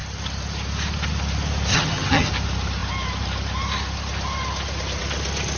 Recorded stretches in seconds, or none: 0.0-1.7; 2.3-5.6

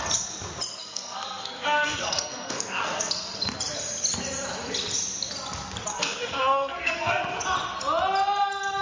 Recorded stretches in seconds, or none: 0.0-0.8; 3.1-5.9; 7.2-8.8